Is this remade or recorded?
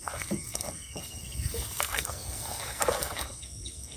remade